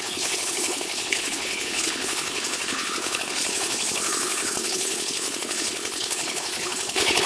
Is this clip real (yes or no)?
no